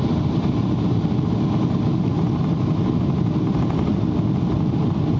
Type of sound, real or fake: real